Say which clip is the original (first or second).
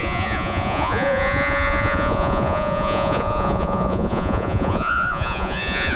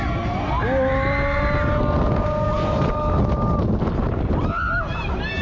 second